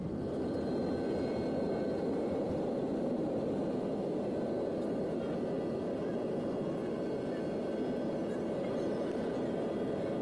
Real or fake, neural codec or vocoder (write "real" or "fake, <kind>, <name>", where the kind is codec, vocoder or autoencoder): real